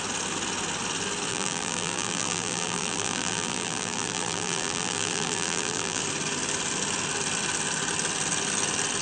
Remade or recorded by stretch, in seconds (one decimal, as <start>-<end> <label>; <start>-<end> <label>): 0.0-1.3 recorded; 1.3-6.0 remade; 6.0-9.0 recorded